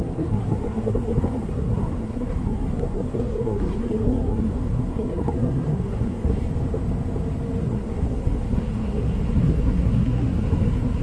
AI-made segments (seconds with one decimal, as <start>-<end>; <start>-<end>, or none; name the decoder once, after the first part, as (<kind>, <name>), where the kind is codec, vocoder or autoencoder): 0.0-6.5 (codec, SNAC); 7.6-11.0